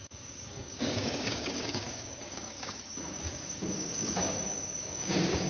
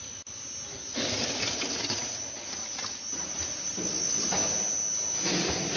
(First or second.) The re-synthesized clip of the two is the first